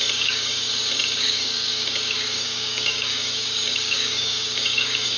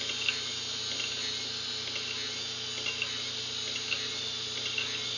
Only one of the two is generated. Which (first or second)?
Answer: first